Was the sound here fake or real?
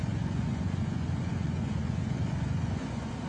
fake